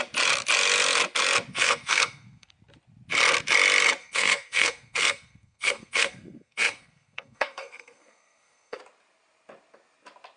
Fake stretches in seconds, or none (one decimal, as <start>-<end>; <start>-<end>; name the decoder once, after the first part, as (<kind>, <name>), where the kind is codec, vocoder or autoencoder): 1.5-2.5 (codec, SNAC); 4.0-8.8